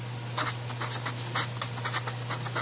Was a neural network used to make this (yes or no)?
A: no